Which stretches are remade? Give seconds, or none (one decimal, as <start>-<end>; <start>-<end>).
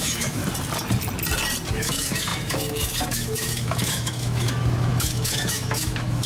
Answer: 0.0-0.4; 1.7-6.3